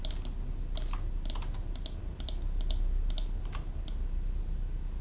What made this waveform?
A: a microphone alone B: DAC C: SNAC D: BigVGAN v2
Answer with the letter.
A